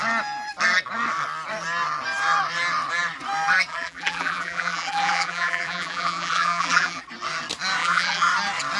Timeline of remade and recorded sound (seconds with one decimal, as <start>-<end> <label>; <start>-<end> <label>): 0.0-3.7 recorded; 3.7-7.0 remade; 7.0-7.8 recorded; 7.8-8.3 remade; 8.3-8.8 recorded